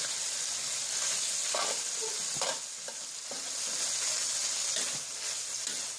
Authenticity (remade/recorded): recorded